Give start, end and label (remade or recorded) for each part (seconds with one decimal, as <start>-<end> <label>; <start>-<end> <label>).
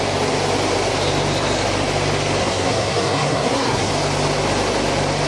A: 0.0-2.4 recorded; 2.4-3.9 remade; 3.9-5.3 recorded